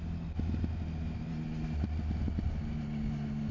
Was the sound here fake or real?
real